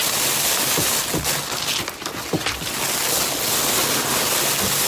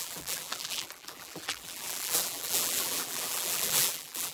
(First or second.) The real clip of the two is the first